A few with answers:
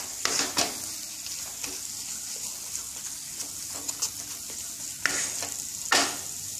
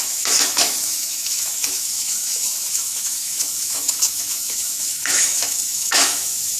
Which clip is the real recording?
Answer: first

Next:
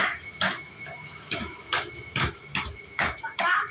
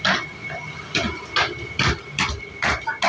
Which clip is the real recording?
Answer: second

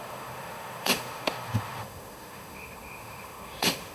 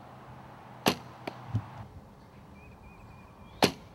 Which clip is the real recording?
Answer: second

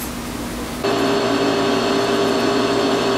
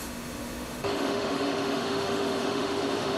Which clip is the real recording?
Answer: first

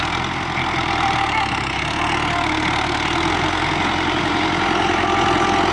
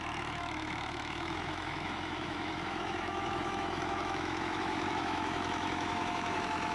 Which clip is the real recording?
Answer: first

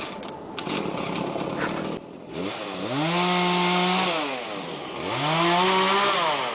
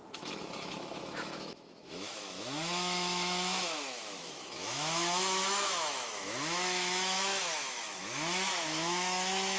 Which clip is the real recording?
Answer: first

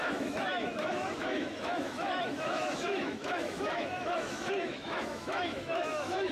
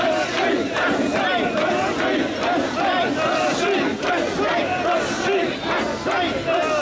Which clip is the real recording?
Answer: second